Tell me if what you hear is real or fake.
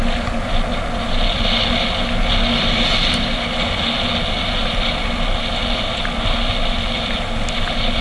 real